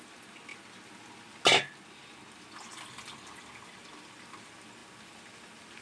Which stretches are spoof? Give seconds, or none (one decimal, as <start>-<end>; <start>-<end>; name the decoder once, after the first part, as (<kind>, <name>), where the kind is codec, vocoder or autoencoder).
none